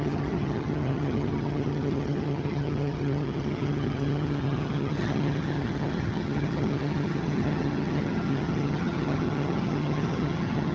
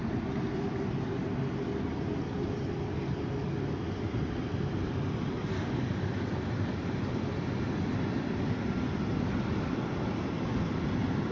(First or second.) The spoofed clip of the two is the first